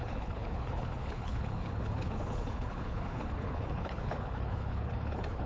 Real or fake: fake